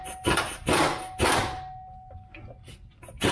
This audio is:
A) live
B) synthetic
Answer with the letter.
A